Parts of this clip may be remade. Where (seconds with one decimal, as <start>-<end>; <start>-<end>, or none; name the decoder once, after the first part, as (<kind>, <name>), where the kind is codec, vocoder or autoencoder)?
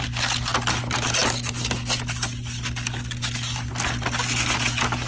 none